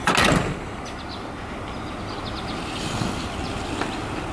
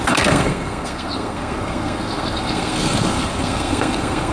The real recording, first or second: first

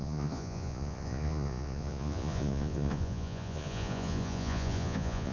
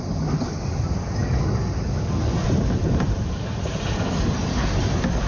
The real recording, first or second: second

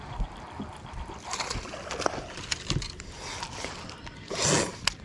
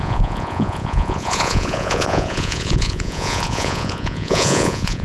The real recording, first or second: first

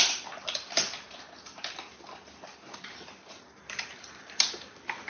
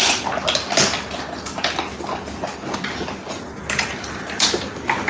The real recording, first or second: second